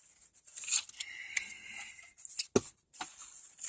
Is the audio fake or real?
real